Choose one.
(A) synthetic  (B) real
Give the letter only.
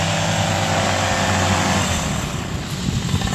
B